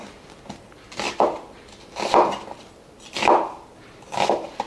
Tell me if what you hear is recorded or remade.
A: recorded